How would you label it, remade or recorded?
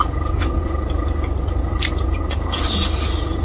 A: recorded